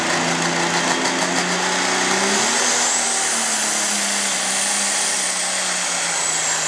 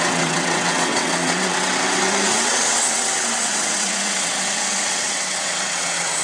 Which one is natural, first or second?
first